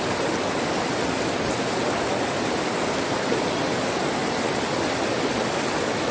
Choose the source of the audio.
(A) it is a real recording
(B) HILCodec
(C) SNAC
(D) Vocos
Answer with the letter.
A